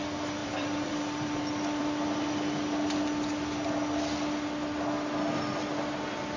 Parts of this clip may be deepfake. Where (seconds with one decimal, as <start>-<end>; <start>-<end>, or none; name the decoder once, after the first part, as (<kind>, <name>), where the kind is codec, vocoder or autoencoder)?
0.4-1.4 (vocoder, BigVGAN v2)